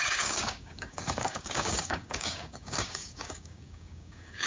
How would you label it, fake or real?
fake